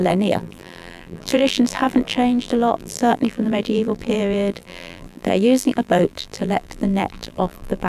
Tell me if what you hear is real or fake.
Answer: fake